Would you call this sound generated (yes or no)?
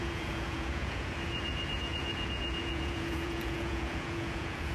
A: yes